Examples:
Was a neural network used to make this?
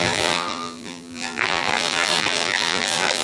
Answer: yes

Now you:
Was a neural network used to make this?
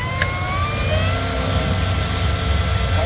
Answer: no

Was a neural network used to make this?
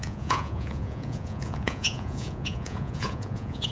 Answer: yes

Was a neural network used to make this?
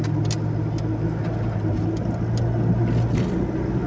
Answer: no